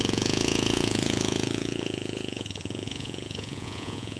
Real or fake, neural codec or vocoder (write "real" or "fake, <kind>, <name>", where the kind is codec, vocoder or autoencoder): fake, vocoder, Vocos